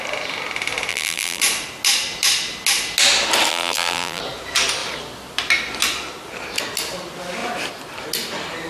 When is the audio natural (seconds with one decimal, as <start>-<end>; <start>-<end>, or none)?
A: 0.0-0.9; 1.4-3.5; 4.2-8.7